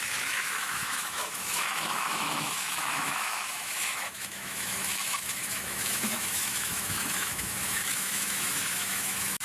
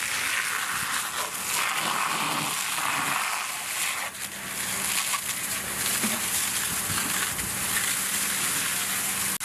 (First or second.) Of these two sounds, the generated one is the first